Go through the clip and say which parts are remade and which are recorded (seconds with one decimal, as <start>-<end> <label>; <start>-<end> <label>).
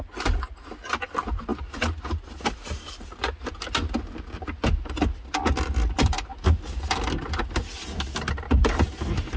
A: 0.0-9.4 recorded